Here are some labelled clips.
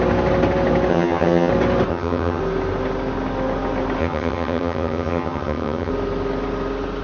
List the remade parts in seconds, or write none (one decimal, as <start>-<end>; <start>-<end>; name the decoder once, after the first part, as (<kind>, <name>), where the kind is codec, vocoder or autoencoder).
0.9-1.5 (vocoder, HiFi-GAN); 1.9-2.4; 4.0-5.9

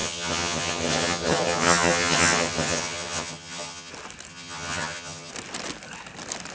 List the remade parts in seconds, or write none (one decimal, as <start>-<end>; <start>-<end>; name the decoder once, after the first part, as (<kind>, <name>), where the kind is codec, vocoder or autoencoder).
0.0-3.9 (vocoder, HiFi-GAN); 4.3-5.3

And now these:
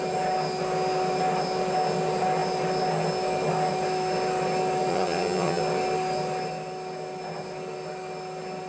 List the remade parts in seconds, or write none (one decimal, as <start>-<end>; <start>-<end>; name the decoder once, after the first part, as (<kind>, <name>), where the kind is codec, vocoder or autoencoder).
4.9-5.6 (vocoder, HiFi-GAN)